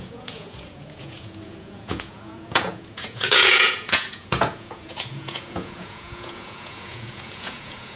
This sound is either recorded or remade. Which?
remade